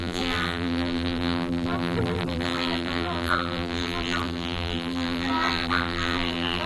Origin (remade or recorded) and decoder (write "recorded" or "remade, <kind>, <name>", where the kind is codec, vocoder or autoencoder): remade, vocoder, BigVGAN v2